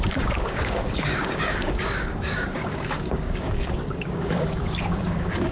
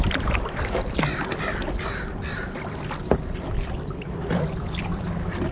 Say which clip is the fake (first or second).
first